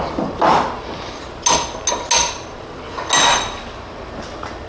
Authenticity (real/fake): real